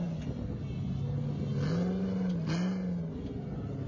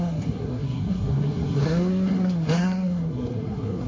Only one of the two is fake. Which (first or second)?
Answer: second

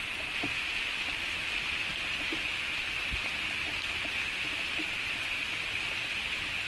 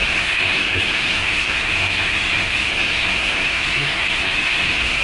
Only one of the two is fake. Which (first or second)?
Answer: second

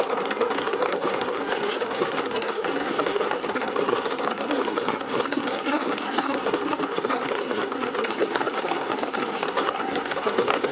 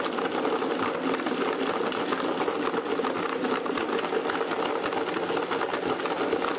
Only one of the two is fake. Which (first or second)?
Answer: first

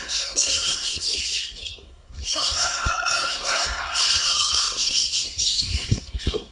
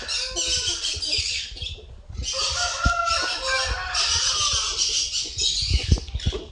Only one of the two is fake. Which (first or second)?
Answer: first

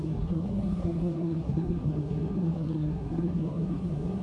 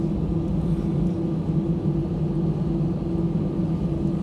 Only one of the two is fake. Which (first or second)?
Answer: first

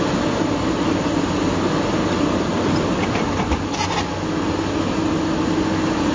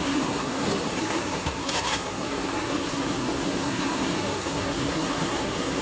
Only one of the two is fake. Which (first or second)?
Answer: second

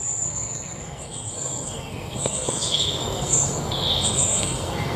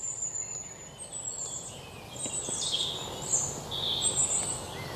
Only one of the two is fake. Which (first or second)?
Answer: first